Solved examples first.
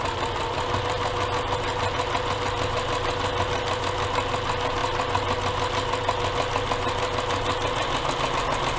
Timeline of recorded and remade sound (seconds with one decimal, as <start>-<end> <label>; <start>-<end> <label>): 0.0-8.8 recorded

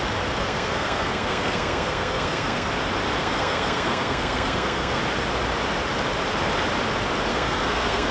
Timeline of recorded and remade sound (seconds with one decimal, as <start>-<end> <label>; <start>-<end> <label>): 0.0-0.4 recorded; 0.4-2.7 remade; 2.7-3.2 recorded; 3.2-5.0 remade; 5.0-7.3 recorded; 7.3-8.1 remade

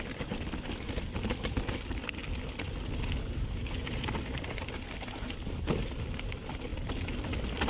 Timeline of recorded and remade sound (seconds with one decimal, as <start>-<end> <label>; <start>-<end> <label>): 0.0-7.7 recorded